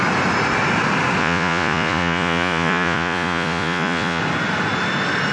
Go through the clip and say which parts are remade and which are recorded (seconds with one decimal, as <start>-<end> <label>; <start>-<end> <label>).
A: 0.0-1.2 recorded; 1.2-4.2 remade; 4.2-5.3 recorded